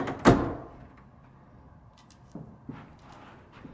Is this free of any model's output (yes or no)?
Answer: yes